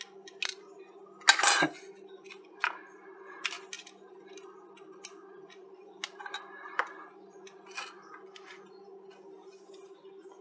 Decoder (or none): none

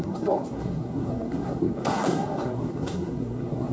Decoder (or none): codec, SNAC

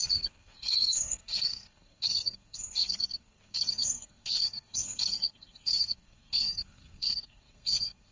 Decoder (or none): codec, SNAC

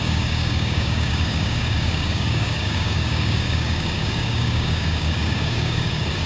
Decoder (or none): codec, DAC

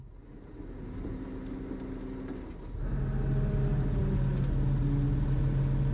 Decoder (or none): none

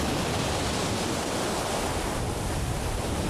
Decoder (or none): none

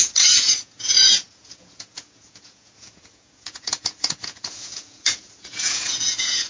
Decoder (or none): vocoder, Vocos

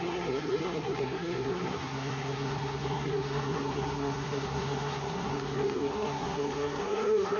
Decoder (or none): codec, SNAC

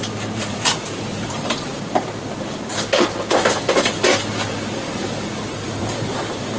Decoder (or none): vocoder, BigVGAN v2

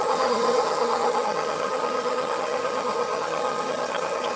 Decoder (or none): vocoder, HiFi-GAN